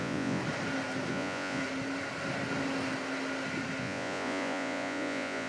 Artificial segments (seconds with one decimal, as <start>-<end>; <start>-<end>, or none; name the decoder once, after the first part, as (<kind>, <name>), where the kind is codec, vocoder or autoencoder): 0.0-0.4 (vocoder, Vocos); 1.1-1.6; 3.8-5.5